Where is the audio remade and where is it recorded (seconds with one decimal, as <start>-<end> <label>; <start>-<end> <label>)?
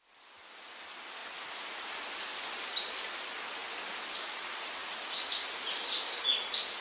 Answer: 0.0-6.8 recorded